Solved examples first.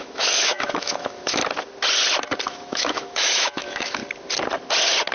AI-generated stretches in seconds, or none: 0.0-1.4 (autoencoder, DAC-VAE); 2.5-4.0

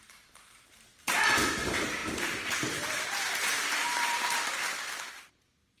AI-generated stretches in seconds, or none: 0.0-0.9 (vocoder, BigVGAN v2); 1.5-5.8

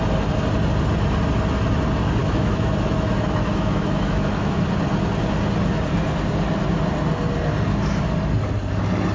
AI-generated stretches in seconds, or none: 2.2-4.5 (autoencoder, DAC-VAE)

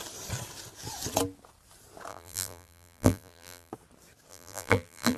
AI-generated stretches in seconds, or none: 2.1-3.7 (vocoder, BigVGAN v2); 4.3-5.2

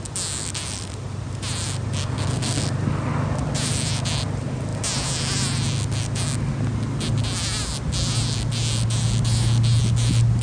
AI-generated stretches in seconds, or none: 2.0-2.6 (codec, SNAC)

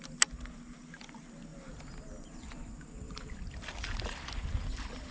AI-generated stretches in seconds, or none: none

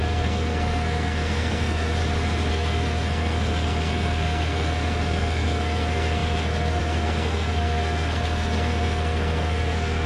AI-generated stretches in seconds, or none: 0.0-2.0 (codec, SNAC); 2.5-10.1

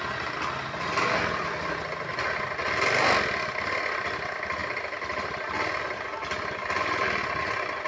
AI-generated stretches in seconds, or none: none